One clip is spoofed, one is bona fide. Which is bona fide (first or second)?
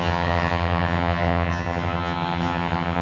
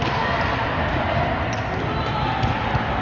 second